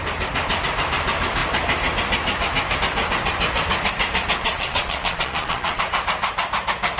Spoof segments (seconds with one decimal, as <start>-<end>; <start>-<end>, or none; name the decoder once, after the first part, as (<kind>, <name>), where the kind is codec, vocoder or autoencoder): 4.4-5.8 (vocoder, Vocos)